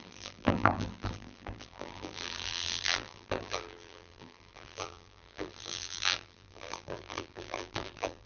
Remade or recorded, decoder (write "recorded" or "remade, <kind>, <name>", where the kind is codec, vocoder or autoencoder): remade, vocoder, BigVGAN v2